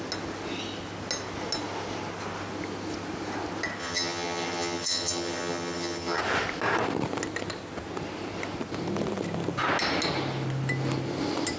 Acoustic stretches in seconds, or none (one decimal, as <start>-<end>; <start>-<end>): 0.0-3.8; 6.2-11.6